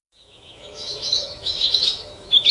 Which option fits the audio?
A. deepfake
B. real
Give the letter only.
A